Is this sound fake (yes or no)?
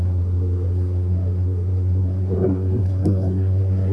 yes